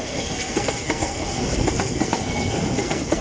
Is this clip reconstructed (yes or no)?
yes